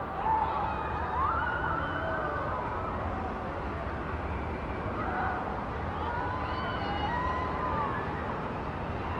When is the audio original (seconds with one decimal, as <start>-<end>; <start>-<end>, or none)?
0.0-9.2